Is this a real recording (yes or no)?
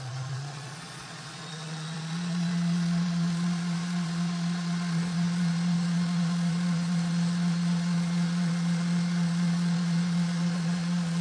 no